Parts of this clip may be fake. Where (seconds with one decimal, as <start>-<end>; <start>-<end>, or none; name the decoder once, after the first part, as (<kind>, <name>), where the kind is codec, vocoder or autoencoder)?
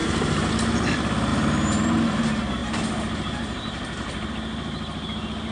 0.0-0.5 (vocoder, BigVGAN v2); 1.3-2.2; 2.6-4.3